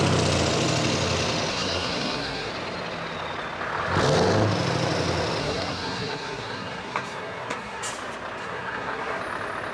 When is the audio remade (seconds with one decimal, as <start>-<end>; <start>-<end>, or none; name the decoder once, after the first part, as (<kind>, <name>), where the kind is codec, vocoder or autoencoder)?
1.5-2.5 (codec, SNAC); 5.4-7.9; 8.4-9.2